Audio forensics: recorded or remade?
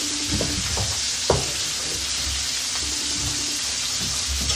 recorded